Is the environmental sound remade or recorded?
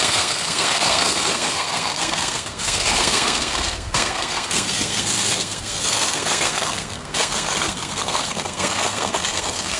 remade